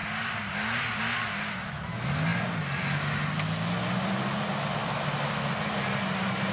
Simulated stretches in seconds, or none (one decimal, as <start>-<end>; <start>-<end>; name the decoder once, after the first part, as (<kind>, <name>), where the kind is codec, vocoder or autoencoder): none